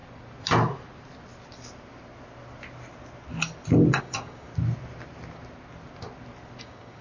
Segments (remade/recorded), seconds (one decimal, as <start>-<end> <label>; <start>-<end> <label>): 0.0-4.0 recorded; 4.0-4.5 remade; 4.5-6.6 recorded; 6.6-7.0 remade